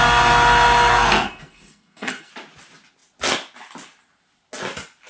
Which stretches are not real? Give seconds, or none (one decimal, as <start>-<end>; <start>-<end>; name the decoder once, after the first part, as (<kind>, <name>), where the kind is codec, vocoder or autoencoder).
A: 0.9-2.3 (codec, SNAC)